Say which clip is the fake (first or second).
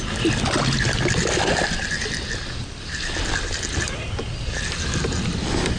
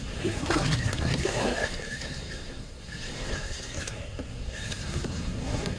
second